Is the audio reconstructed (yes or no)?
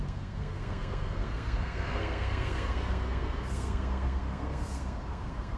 yes